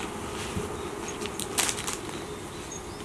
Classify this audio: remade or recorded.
recorded